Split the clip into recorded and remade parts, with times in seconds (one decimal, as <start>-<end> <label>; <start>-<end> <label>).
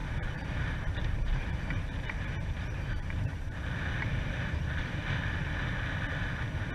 0.0-3.6 remade; 3.6-6.7 recorded